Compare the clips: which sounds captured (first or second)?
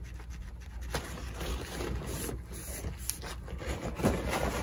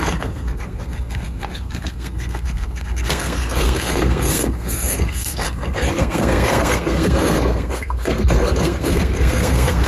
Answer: first